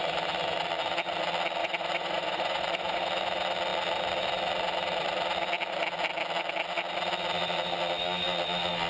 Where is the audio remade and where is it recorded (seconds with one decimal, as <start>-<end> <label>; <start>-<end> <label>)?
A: 0.0-1.6 recorded; 1.6-3.0 remade; 3.0-8.9 recorded